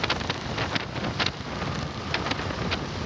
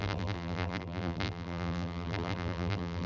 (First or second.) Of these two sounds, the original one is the first